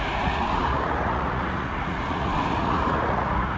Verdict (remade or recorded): remade